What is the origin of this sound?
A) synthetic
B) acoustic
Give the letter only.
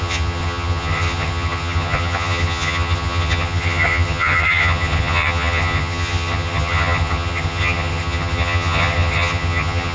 A